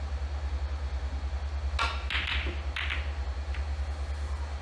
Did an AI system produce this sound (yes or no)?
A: no